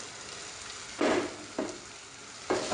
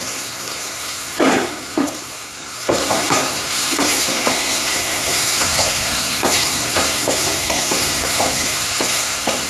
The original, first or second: first